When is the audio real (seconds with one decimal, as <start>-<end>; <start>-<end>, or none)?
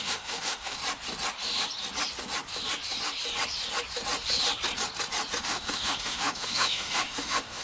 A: 0.8-5.4